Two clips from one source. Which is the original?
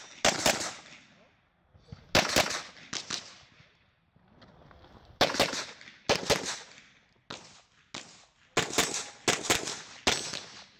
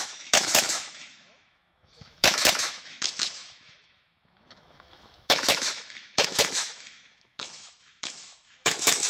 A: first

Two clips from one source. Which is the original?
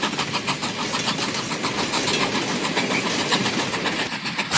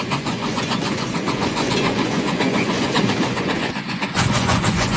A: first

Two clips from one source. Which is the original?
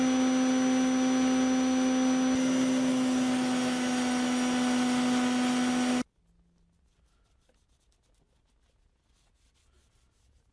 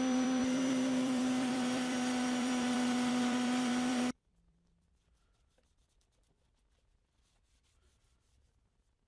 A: first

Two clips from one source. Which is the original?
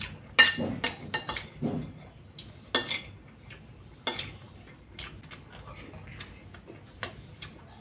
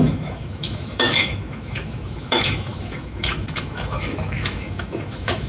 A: first